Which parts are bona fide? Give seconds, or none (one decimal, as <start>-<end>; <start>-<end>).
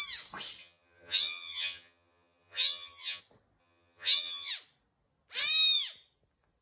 0.0-0.6; 3.2-3.6; 4.5-6.6